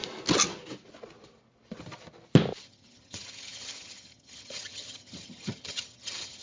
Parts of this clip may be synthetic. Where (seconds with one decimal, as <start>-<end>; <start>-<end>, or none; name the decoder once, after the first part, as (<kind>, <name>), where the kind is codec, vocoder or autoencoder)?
2.6-6.4 (vocoder, HiFi-GAN)